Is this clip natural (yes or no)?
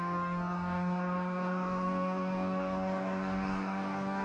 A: no